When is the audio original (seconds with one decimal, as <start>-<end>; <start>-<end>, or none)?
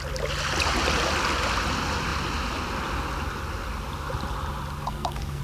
0.0-4.8